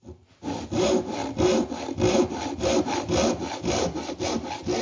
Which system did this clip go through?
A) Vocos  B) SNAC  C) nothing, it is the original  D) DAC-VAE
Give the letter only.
C